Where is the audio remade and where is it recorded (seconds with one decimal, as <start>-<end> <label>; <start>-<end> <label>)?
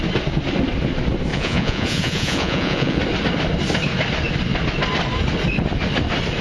0.0-1.3 recorded; 1.3-3.0 remade; 3.0-6.4 recorded